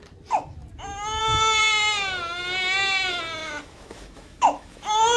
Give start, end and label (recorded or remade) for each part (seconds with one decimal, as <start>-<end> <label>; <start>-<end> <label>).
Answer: 0.0-3.4 recorded; 3.4-4.8 remade; 4.8-5.2 recorded